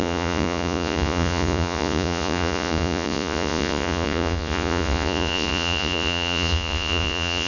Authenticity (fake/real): fake